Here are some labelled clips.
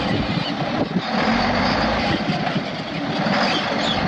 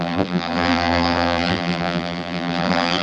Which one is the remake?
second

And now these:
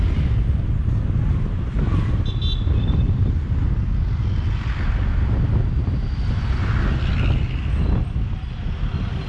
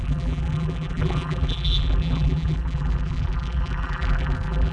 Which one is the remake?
second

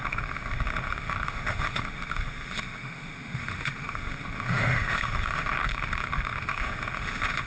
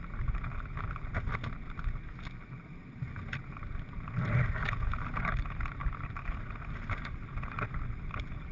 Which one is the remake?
first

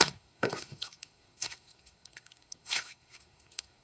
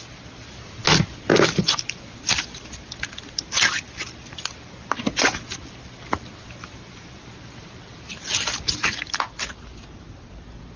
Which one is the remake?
first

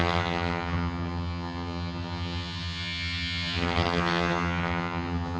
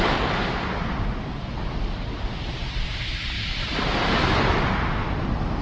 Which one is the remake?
first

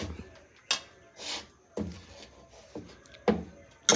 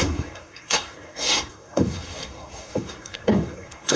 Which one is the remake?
second